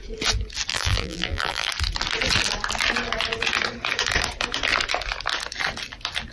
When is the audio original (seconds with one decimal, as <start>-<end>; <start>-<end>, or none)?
0.0-0.7; 1.7-6.3